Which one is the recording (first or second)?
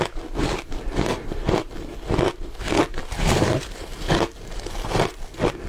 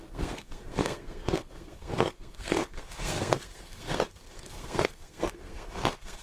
first